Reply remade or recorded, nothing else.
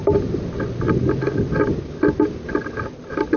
recorded